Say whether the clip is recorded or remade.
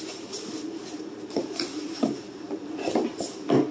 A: recorded